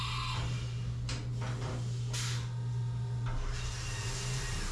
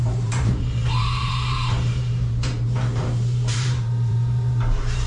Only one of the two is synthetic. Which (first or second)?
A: second